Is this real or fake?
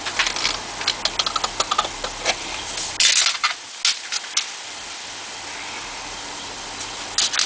real